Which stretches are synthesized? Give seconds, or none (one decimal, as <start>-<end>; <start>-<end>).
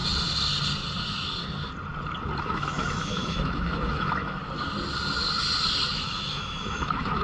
2.4-4.4; 5.9-7.2